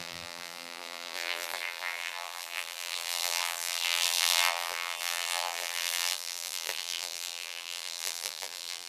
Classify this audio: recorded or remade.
remade